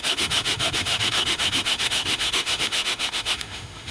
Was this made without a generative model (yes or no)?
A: no